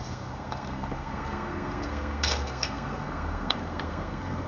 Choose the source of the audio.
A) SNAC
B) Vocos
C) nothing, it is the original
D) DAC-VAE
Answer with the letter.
A